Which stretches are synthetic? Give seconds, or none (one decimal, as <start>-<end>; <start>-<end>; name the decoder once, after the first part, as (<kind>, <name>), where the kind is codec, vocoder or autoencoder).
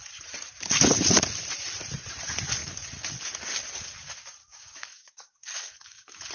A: 4.4-6.3 (autoencoder, DAC-VAE)